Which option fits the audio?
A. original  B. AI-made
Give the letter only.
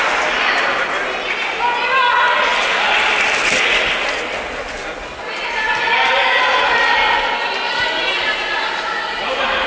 A